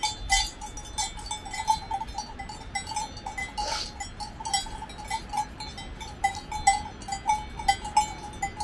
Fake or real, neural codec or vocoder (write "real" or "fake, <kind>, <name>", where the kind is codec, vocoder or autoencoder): real